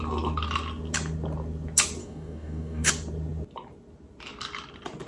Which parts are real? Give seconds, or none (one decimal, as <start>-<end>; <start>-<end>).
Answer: 0.0-2.0; 2.9-5.1